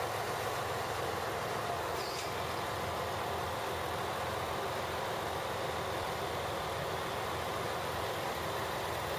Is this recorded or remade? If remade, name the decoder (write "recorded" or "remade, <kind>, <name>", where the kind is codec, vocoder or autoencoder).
recorded